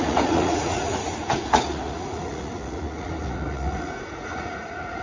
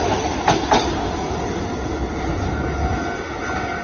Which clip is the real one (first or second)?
second